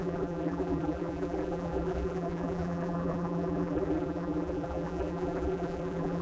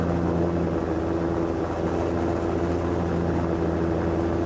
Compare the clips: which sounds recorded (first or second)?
second